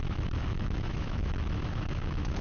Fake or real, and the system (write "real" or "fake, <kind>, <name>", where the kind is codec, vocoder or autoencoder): fake, autoencoder, DAC-VAE